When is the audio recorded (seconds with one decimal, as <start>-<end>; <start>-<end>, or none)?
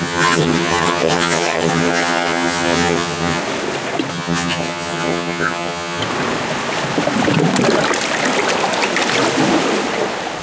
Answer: 3.4-4.1; 6.0-10.4